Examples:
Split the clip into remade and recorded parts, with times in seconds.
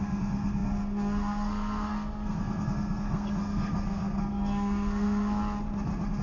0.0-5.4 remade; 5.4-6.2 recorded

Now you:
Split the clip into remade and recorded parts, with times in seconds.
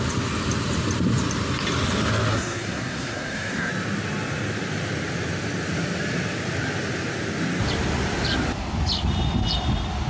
0.0-2.3 recorded; 2.3-3.7 remade; 3.7-10.1 recorded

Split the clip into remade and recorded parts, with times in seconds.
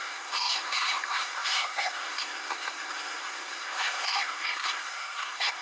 0.0-5.6 remade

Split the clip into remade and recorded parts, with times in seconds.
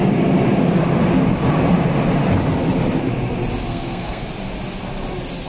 0.0-3.7 recorded; 3.7-4.3 remade; 4.3-5.5 recorded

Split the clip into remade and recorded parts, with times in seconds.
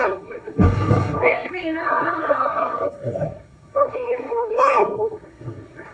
0.0-5.9 remade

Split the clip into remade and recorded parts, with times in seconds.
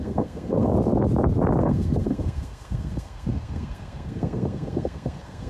0.0-0.7 remade; 0.7-1.6 recorded; 1.6-5.5 remade